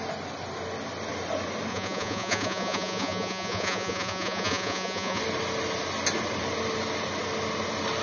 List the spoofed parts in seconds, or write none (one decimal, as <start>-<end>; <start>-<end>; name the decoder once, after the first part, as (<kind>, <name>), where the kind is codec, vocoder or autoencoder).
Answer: 1.7-5.2 (vocoder, Vocos)